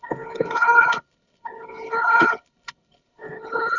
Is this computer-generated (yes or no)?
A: yes